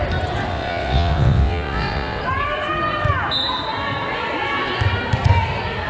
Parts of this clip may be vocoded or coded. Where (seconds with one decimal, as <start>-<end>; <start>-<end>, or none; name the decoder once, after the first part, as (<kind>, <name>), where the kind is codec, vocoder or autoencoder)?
0.5-2.2 (vocoder, WaveNeXt)